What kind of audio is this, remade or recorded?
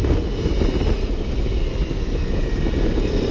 recorded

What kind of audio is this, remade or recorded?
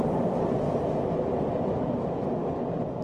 recorded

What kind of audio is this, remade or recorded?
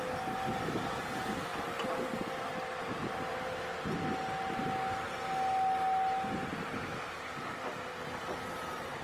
recorded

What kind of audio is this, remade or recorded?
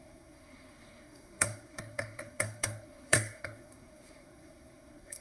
remade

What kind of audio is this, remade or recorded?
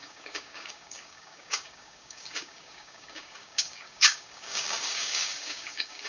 remade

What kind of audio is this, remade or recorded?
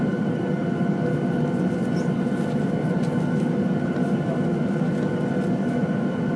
recorded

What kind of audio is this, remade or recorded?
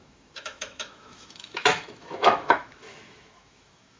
remade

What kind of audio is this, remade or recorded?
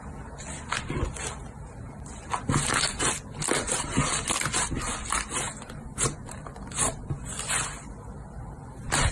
recorded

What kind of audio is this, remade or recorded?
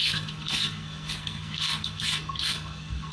remade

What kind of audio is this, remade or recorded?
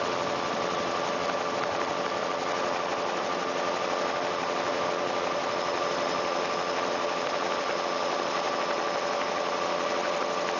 recorded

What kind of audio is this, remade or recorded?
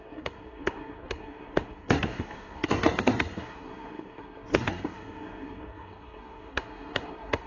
remade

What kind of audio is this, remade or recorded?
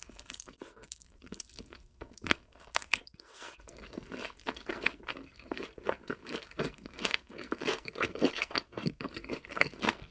remade